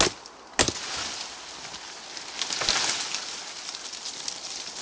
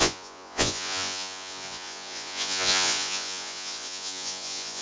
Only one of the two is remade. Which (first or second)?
second